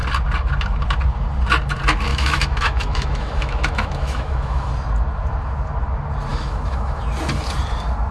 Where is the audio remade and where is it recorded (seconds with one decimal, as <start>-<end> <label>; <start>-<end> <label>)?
0.0-2.1 recorded; 2.1-4.7 remade; 4.7-6.3 recorded; 6.3-7.0 remade; 7.0-8.1 recorded